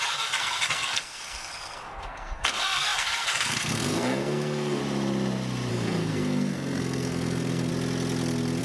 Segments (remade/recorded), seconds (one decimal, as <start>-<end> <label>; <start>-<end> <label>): 0.0-4.8 remade; 4.8-5.7 recorded; 5.7-7.7 remade; 7.7-8.6 recorded